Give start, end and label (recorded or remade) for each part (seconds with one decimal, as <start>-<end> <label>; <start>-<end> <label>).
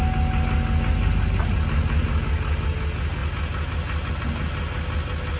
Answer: 0.0-5.4 recorded